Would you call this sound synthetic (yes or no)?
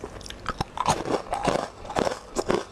no